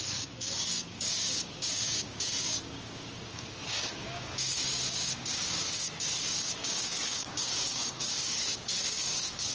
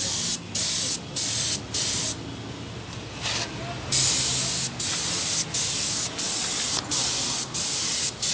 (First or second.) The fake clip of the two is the first